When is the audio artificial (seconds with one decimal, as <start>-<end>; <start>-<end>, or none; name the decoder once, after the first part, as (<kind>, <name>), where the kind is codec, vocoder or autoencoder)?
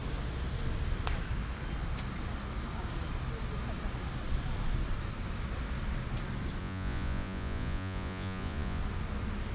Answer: 6.6-8.8 (vocoder, Vocos)